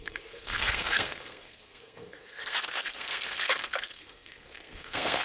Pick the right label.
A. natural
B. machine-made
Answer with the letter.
B